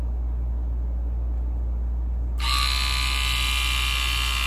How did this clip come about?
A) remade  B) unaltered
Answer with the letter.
B